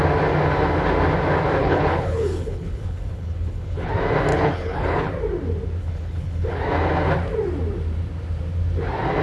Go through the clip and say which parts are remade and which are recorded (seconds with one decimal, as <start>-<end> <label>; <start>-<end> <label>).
0.0-1.6 recorded; 1.6-3.9 remade; 3.9-4.3 recorded; 4.3-5.1 remade; 5.1-5.8 recorded; 5.8-6.6 remade; 6.6-9.2 recorded